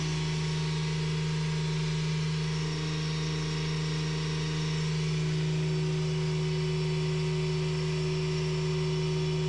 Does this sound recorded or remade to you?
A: recorded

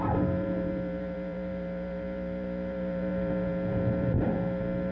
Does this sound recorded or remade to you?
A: remade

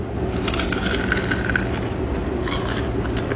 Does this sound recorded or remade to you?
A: recorded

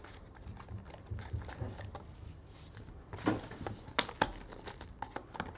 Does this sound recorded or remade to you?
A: recorded